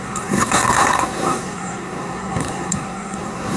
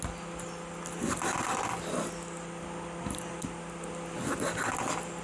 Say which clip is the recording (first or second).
second